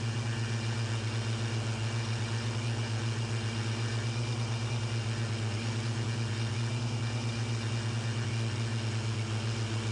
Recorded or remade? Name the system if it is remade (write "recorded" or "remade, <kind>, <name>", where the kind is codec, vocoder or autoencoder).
recorded